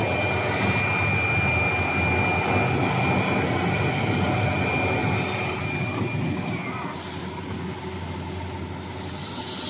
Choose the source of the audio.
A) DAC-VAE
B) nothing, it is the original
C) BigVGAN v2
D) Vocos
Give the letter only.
B